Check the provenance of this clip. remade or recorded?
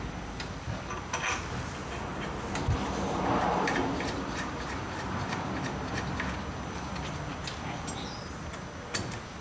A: recorded